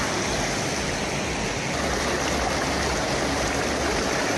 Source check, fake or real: real